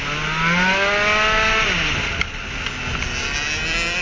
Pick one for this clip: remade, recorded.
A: recorded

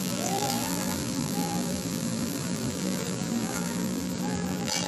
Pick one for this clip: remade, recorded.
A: remade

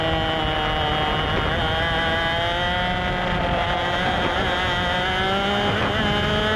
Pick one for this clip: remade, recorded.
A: recorded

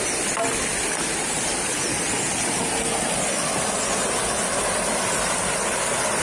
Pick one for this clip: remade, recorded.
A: recorded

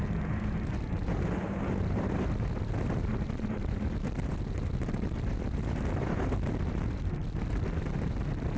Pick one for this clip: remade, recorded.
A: remade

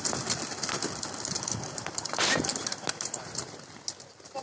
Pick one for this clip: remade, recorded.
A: recorded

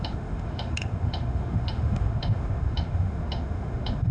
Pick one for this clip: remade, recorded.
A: remade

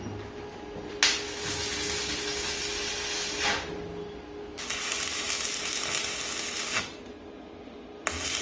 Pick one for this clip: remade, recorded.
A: recorded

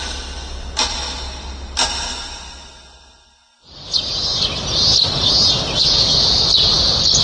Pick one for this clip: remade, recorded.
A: recorded